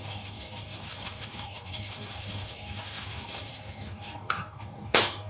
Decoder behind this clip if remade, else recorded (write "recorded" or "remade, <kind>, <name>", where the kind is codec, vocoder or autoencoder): remade, codec, DAC